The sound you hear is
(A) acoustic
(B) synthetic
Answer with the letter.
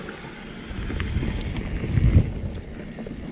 A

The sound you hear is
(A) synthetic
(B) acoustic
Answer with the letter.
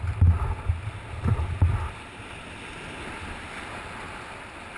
B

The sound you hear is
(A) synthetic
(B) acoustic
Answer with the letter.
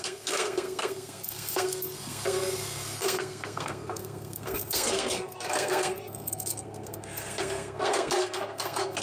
A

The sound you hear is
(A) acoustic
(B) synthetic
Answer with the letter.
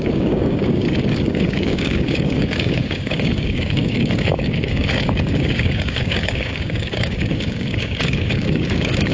B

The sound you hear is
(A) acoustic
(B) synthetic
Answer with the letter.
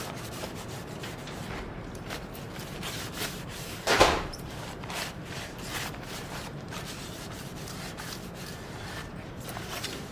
B